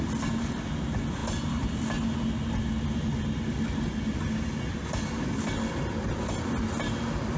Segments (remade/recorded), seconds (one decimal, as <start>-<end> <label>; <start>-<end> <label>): 0.0-7.4 recorded